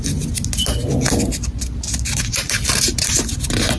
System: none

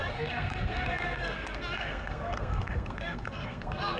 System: codec, SNAC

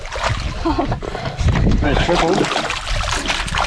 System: none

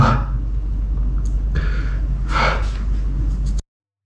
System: none